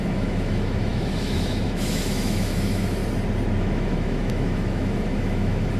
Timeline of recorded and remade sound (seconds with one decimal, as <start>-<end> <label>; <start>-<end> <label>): 0.0-3.0 remade; 3.0-3.6 recorded; 3.6-5.8 remade